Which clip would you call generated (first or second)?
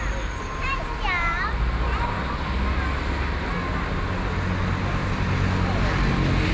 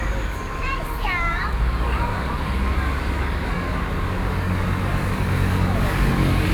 second